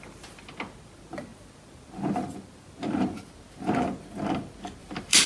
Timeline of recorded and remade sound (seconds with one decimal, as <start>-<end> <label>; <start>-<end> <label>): 0.0-4.8 recorded; 4.8-5.3 remade